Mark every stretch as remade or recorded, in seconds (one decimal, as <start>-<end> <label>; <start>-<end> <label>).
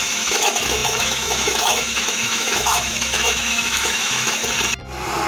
0.0-4.4 remade; 4.4-5.3 recorded